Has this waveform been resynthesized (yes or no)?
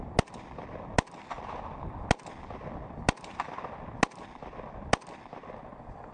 no